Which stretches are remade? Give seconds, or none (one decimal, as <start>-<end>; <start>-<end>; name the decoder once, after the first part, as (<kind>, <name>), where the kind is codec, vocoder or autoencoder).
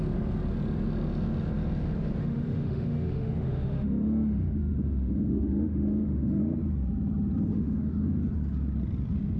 2.2-6.4 (autoencoder, DAC-VAE); 7.5-8.2